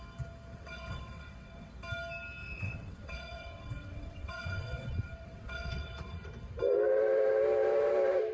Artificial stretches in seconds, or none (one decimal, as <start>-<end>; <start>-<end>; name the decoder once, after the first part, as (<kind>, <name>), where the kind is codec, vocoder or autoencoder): 0.5-1.7 (vocoder, WaveNeXt); 2.4-6.3